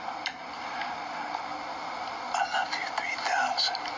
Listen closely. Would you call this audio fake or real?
real